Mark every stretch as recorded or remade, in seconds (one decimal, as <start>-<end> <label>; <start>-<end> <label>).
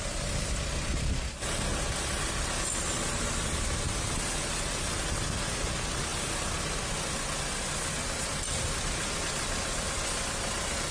0.0-10.9 recorded